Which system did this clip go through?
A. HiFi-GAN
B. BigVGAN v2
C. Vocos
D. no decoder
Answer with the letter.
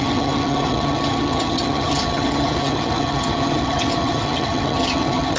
A